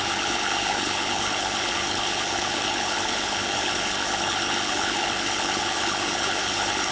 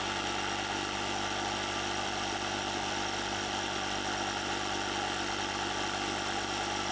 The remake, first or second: first